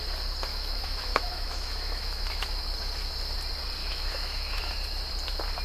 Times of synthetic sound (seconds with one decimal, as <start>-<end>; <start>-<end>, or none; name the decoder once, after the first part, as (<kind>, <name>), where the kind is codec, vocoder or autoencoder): 0.5-2.5 (autoencoder, DAC-VAE); 3.8-4.7